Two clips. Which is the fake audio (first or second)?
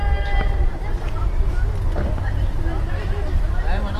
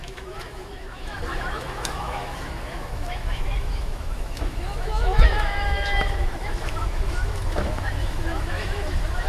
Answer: second